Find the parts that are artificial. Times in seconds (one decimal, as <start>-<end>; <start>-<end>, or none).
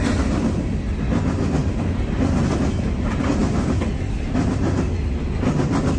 1.6-2.3